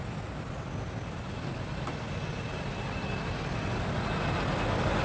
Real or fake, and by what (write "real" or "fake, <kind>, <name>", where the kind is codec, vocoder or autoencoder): real